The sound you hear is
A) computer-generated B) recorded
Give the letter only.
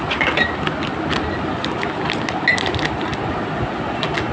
B